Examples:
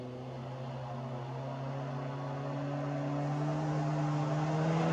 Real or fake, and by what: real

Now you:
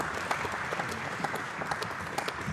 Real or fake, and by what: real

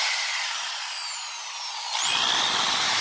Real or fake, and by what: real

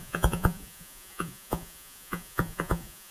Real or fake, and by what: fake, vocoder, Vocos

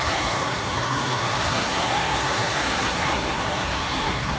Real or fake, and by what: fake, codec, SNAC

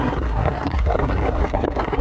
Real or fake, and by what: fake, codec, SNAC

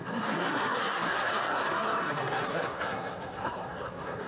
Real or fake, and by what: fake, codec, SNAC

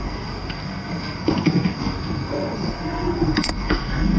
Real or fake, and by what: fake, codec, SNAC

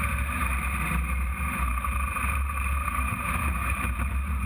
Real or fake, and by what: fake, vocoder, BigVGAN v2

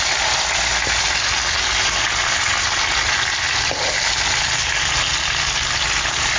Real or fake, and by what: real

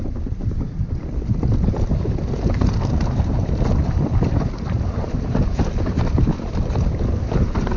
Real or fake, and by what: real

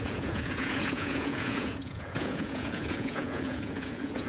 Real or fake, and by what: fake, vocoder, Vocos